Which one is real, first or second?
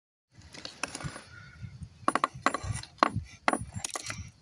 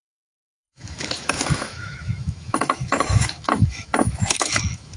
first